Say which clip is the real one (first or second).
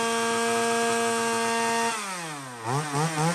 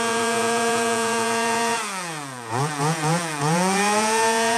first